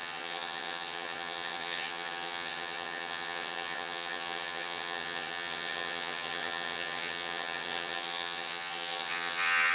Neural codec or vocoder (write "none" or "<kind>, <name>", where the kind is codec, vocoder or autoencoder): vocoder, HiFi-GAN